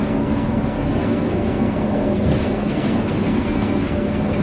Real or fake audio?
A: fake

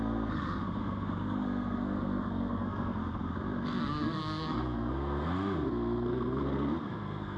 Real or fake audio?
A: fake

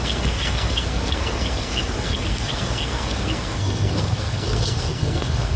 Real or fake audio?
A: fake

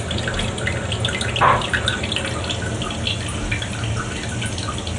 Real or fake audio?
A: real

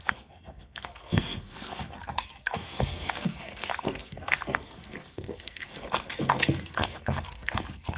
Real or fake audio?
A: fake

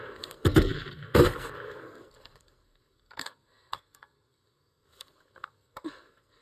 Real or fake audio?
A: fake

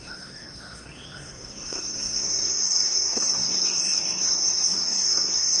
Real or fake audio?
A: fake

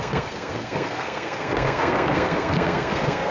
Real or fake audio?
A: fake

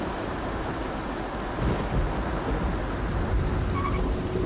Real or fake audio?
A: real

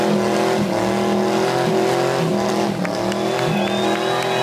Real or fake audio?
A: real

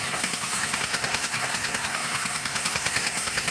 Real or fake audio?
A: fake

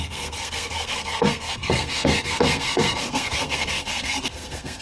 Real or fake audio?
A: fake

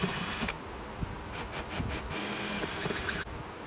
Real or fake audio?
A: real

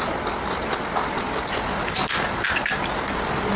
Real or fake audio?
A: real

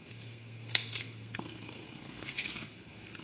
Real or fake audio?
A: fake